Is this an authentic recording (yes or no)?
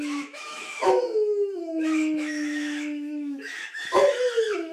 no